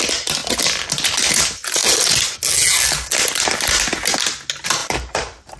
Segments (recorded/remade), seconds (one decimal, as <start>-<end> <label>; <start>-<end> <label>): 0.0-4.8 recorded; 4.8-5.6 remade